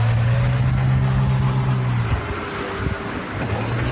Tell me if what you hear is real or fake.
real